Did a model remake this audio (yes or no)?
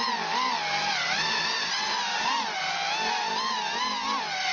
no